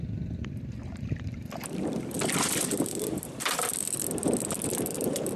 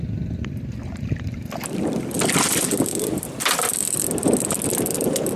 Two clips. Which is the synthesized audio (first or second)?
first